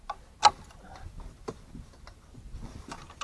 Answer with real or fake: real